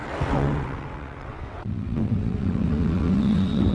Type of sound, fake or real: fake